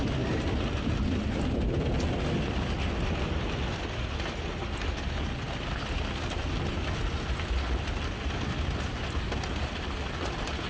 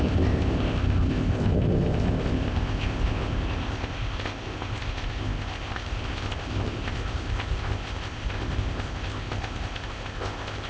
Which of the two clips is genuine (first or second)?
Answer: first